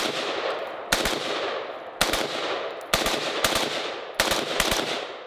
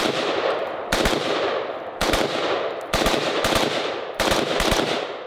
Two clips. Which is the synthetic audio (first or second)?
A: second